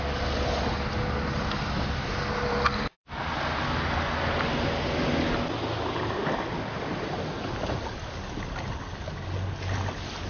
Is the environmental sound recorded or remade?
recorded